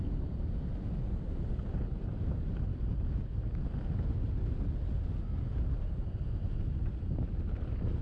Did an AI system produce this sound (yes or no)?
no